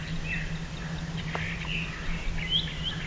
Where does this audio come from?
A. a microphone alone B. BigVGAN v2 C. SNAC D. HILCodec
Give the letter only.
A